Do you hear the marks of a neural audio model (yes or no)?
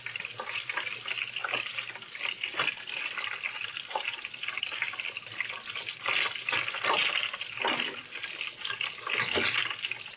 no